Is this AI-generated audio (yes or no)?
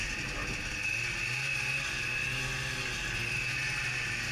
no